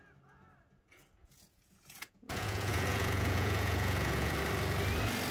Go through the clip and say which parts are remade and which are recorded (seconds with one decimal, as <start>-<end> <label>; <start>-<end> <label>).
0.0-1.2 recorded; 1.2-4.4 remade; 4.4-5.3 recorded